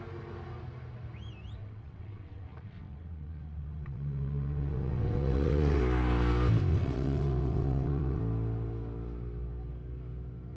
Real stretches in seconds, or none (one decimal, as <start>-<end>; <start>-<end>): 0.0-1.6; 5.8-6.7; 8.2-10.6